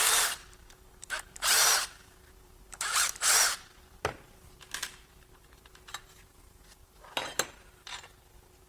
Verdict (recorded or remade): remade